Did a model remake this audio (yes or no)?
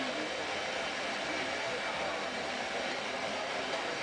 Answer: no